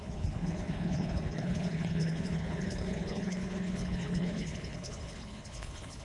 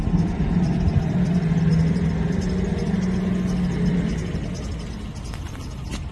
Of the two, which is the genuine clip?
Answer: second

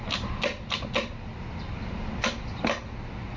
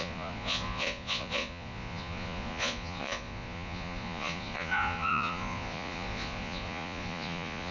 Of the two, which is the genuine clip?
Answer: first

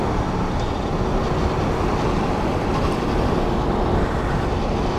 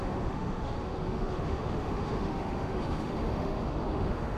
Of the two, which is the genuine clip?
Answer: first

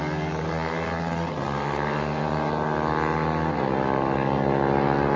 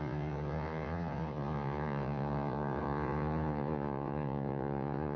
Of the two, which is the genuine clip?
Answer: first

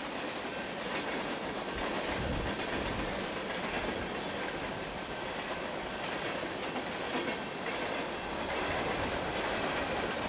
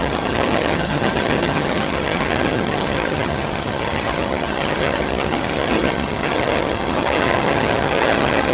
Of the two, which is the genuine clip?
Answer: first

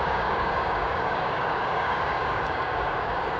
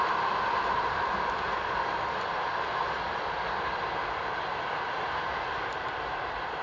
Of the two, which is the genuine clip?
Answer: second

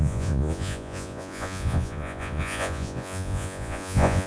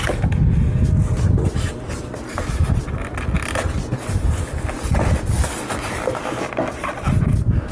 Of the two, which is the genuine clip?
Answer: second